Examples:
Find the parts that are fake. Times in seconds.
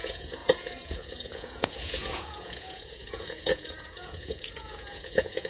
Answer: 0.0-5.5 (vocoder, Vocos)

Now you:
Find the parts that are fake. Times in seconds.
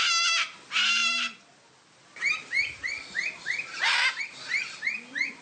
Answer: none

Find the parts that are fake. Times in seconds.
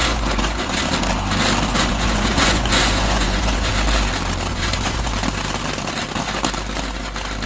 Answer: 0.0-0.8 (vocoder, Vocos); 1.7-3.7; 4.5-5.1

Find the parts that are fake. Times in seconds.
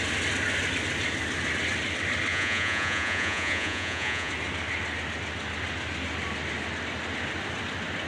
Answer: 2.3-4.3 (vocoder, Vocos)